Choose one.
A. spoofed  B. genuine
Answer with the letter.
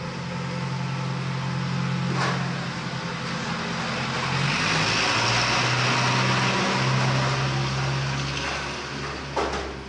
B